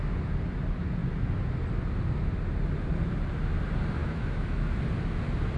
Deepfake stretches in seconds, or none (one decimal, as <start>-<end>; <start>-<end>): 4.0-4.8